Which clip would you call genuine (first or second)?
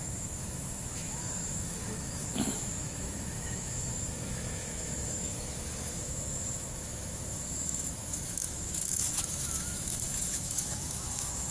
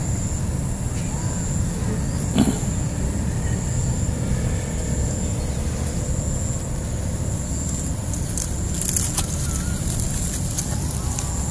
second